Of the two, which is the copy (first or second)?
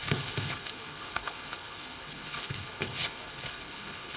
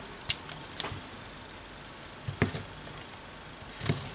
first